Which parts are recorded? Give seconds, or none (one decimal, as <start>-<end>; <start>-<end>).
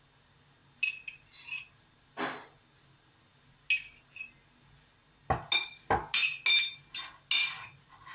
0.0-8.1